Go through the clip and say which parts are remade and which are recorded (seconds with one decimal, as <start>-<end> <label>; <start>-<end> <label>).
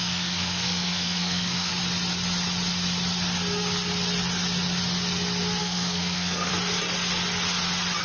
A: 0.0-1.7 remade; 1.7-5.6 recorded; 5.6-6.5 remade; 6.5-8.0 recorded